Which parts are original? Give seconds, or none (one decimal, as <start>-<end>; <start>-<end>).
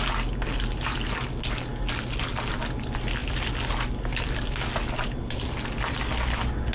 0.0-6.7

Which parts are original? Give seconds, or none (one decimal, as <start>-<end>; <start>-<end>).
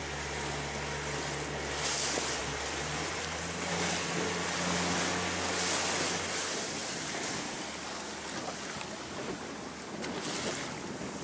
0.0-2.4; 4.3-11.2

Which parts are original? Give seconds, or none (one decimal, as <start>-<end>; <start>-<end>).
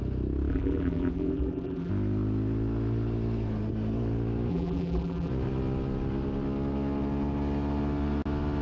0.0-0.5; 1.9-4.5; 5.3-8.6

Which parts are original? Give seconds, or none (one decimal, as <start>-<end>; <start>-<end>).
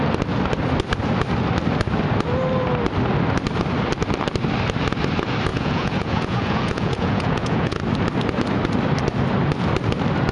0.0-5.5; 7.8-10.3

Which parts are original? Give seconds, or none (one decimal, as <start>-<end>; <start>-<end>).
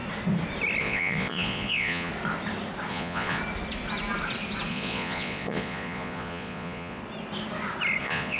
0.0-0.8; 2.1-2.9; 3.4-4.7; 7.0-8.0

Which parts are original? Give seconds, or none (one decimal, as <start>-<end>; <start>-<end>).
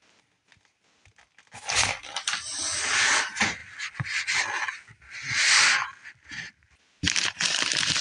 0.0-8.0